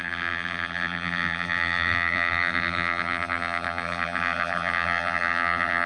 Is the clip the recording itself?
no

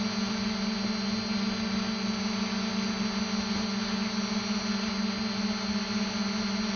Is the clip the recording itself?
yes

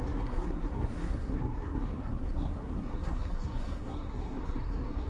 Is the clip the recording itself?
no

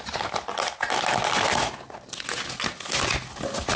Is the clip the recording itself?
yes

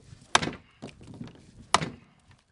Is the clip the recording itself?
yes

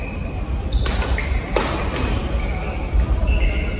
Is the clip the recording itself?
yes